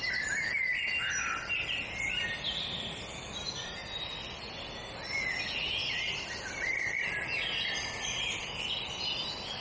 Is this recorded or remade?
recorded